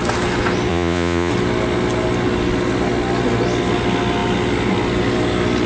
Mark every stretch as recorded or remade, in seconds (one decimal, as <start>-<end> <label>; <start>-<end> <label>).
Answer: 0.0-0.7 recorded; 0.7-1.3 remade; 1.3-5.7 recorded